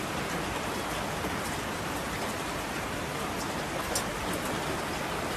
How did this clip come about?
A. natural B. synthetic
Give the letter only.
A